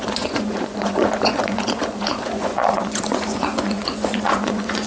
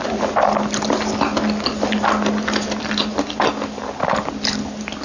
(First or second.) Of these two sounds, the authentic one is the second